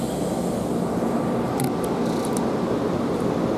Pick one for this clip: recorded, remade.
recorded